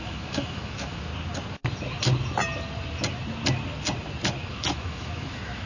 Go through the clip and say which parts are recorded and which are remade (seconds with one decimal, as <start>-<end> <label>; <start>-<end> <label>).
0.0-1.1 remade; 1.1-4.5 recorded; 4.5-5.7 remade